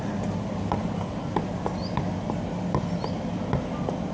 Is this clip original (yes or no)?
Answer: yes